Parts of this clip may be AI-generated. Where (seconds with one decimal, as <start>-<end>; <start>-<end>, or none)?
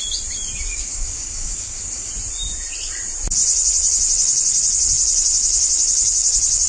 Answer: 0.7-2.1